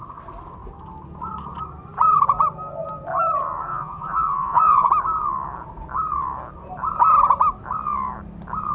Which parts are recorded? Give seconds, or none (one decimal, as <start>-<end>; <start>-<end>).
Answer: 0.0-3.7; 4.9-8.7